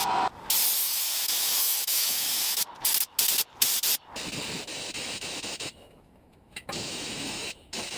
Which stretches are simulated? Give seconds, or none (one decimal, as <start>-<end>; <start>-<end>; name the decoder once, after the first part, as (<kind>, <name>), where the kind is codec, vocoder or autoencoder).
0.8-2.6 (autoencoder, DAC-VAE); 4.7-8.0